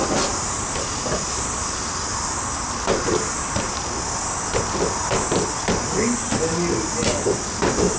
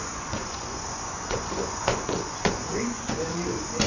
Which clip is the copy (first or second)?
second